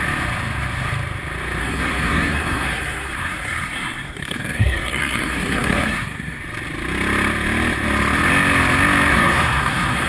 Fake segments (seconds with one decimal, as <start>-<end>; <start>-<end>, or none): 1.6-6.4; 9.1-10.1